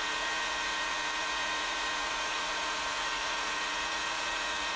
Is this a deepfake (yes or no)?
yes